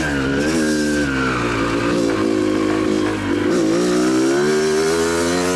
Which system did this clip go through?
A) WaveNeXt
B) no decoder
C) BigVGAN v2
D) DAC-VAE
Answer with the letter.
B